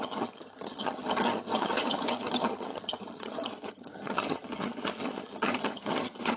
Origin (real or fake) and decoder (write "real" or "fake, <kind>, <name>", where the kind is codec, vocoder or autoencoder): fake, vocoder, HiFi-GAN